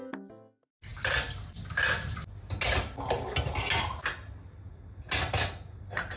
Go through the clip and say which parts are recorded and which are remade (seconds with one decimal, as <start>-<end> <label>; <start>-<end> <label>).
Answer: 0.0-6.2 recorded